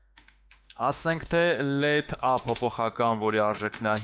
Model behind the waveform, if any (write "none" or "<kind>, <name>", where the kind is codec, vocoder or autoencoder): autoencoder, DAC-VAE